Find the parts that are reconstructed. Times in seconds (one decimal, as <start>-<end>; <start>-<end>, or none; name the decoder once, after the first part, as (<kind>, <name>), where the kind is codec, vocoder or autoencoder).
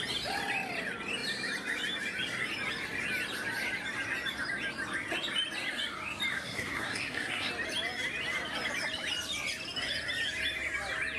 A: 6.3-7.5 (codec, SNAC)